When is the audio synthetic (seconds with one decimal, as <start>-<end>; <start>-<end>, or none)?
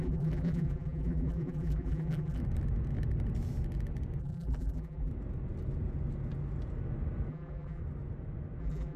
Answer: 0.0-2.4; 4.2-5.1; 7.3-7.8; 8.6-9.0